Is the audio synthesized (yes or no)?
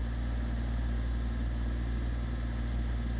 no